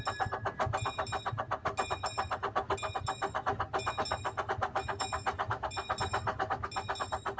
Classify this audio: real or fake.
real